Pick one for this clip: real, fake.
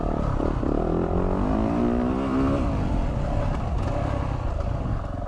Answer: real